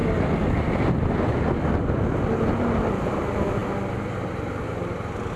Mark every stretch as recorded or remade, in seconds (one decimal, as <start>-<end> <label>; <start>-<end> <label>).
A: 0.0-5.4 recorded